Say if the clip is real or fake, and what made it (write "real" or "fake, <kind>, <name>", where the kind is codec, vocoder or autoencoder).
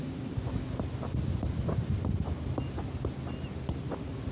real